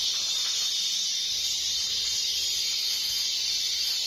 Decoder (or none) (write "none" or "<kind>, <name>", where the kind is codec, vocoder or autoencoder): none